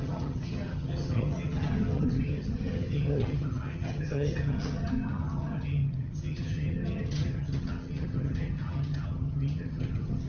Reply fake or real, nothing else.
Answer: fake